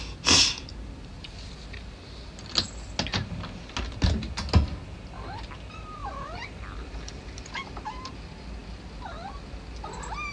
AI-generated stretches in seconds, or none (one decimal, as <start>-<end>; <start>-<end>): 6.0-8.1